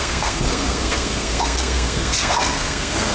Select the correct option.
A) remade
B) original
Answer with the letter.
A